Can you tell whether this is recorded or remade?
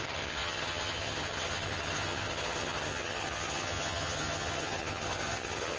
remade